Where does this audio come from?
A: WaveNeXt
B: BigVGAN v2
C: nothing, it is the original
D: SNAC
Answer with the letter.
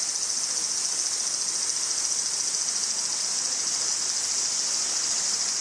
C